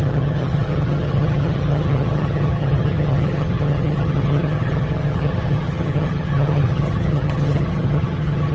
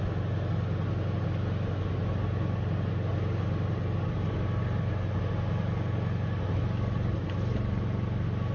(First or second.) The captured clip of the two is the second